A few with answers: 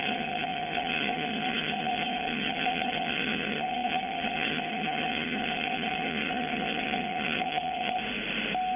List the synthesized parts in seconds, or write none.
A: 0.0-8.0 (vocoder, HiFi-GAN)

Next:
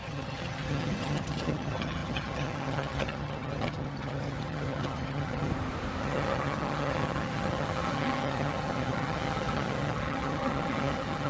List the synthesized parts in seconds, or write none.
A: 0.0-5.5 (vocoder, HiFi-GAN); 6.0-11.3

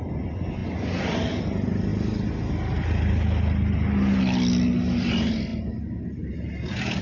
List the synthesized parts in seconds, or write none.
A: none

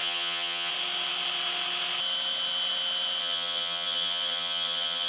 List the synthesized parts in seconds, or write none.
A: 0.0-0.7 (vocoder, HiFi-GAN); 3.2-5.1